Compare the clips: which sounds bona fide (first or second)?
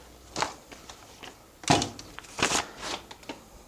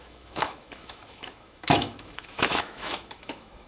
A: first